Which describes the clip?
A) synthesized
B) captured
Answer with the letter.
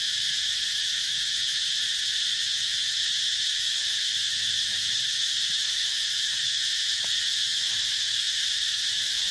A